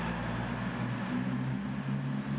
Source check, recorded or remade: recorded